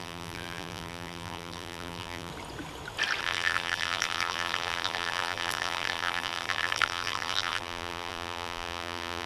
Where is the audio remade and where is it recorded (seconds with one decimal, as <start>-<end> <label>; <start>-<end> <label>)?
0.0-2.3 remade; 2.3-3.2 recorded; 3.2-9.3 remade